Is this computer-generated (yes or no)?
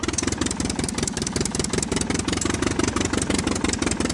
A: no